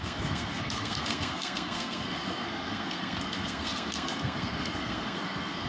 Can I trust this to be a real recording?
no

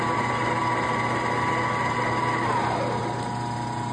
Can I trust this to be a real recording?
yes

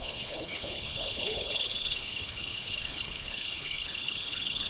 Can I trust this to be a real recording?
no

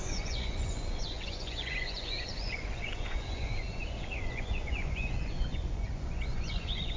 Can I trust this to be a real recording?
no